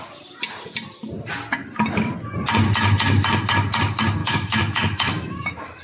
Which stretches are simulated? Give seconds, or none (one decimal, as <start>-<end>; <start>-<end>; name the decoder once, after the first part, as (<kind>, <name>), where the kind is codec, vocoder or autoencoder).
4.2-5.8 (autoencoder, DAC-VAE)